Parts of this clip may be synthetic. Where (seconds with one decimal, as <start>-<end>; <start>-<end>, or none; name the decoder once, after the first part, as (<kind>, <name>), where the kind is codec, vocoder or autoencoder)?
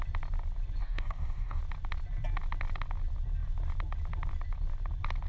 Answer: 0.8-1.6 (codec, DAC)